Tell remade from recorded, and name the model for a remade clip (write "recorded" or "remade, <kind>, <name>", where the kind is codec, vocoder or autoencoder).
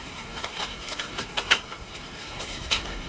remade, codec, SNAC